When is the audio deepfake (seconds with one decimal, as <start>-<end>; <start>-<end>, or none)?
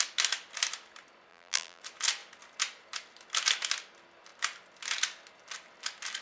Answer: 1.3-1.8